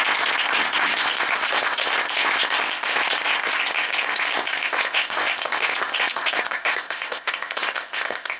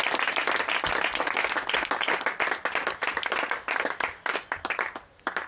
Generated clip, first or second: first